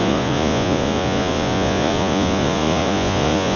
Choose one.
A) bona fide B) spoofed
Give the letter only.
B